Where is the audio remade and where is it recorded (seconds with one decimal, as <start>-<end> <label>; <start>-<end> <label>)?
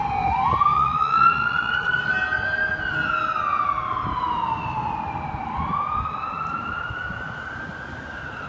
0.0-0.7 recorded; 0.7-2.0 remade; 2.0-8.5 recorded